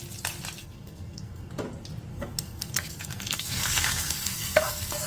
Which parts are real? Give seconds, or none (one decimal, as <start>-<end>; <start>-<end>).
0.0-0.6; 1.5-2.1